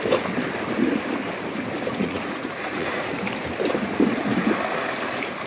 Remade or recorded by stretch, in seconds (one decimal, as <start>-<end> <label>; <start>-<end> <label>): 0.0-1.9 recorded; 1.9-3.1 remade; 3.1-5.5 recorded